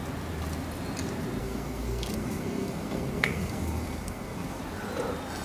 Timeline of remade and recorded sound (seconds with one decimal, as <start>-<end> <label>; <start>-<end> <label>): 0.0-1.4 recorded; 1.4-4.6 remade; 4.6-5.4 recorded